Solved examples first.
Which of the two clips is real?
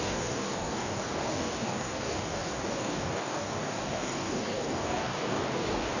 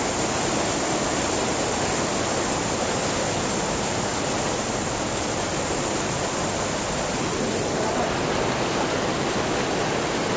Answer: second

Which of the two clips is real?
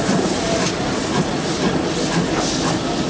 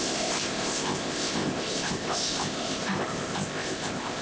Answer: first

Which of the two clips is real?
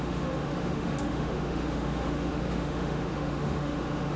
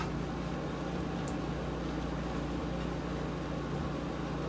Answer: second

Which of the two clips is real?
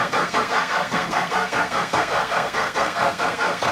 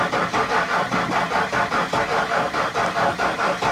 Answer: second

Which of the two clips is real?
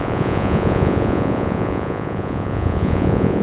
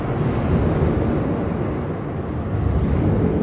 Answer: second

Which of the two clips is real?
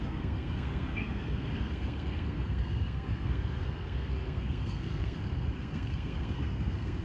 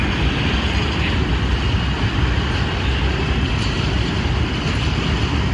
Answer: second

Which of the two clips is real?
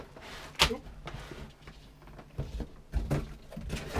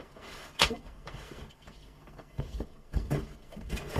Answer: first